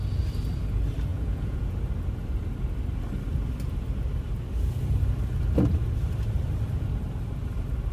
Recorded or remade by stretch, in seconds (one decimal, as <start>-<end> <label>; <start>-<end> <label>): 0.0-1.1 recorded; 1.1-1.8 remade; 1.8-7.9 recorded

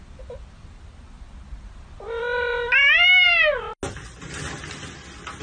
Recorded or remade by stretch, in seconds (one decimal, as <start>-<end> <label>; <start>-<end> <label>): 0.0-5.4 recorded

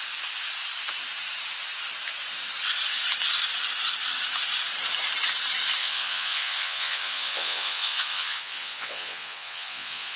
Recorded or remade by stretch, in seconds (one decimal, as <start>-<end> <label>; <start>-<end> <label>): 0.0-5.8 recorded; 5.8-10.2 remade

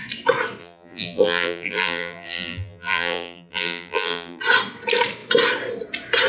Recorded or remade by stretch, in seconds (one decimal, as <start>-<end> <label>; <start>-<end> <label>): 0.0-0.6 recorded; 0.6-4.4 remade; 4.4-6.3 recorded

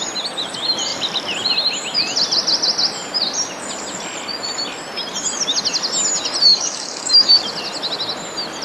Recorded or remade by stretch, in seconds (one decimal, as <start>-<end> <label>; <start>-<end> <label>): 0.0-6.5 recorded; 6.5-7.1 remade; 7.1-8.6 recorded

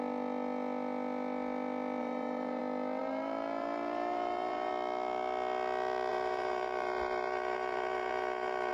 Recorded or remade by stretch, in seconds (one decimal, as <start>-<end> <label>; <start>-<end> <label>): 0.0-2.0 recorded; 2.0-2.6 remade; 2.6-3.0 recorded; 3.0-4.7 remade; 4.7-6.1 recorded; 6.1-8.7 remade

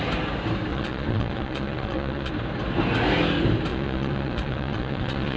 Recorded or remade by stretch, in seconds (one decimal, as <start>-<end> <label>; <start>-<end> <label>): 0.0-0.7 recorded; 0.7-2.3 remade; 2.3-3.7 recorded; 3.7-5.4 remade

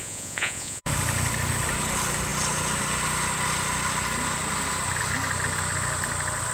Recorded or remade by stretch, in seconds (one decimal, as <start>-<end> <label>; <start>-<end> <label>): 0.0-0.9 remade; 0.9-6.5 recorded